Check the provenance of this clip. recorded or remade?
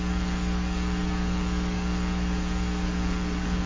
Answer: remade